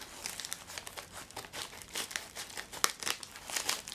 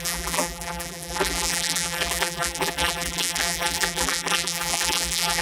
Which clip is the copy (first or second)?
second